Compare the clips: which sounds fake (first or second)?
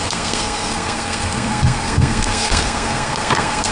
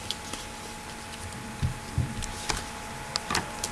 first